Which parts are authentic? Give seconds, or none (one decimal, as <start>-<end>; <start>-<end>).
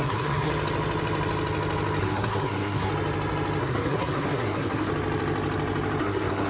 0.5-2.0; 2.9-3.6; 4.9-6.0